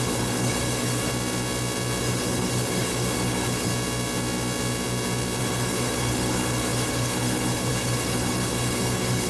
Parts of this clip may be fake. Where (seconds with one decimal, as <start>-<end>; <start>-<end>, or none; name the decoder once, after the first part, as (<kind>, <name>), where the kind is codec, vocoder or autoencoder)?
0.0-1.1 (codec, HILCodec); 2.0-3.7; 5.4-9.3